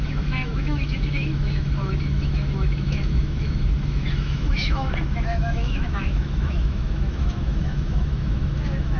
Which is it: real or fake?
fake